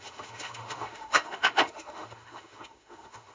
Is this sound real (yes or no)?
no